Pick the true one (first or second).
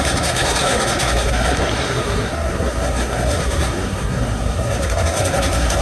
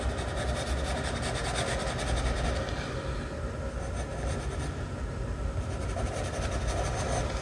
second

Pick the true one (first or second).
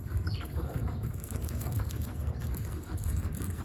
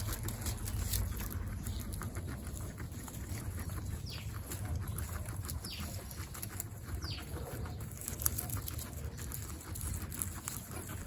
second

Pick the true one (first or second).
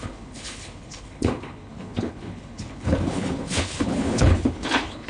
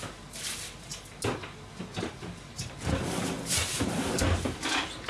second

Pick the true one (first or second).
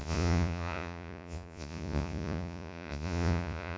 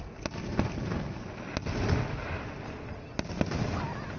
second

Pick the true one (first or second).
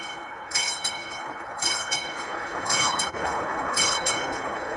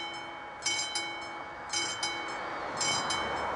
second